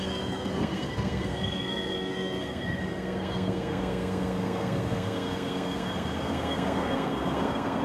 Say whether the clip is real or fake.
fake